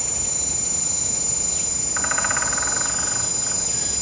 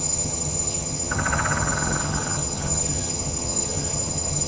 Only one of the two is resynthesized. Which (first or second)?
second